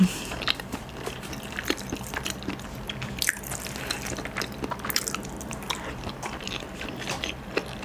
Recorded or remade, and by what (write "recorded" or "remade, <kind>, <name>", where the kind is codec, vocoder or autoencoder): recorded